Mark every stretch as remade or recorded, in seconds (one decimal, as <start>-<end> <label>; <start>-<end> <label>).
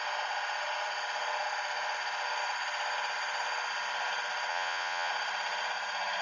0.0-4.5 recorded; 4.5-5.1 remade; 5.1-6.2 recorded